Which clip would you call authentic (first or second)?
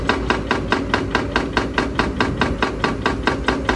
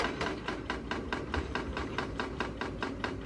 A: first